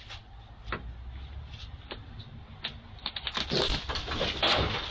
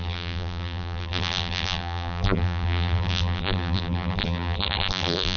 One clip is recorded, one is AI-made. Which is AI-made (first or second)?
second